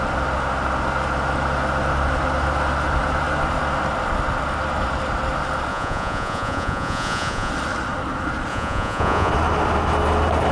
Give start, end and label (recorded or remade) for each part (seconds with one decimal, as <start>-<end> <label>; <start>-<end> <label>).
0.0-5.7 recorded; 5.7-7.5 remade; 7.5-8.5 recorded; 8.5-9.3 remade; 9.3-10.5 recorded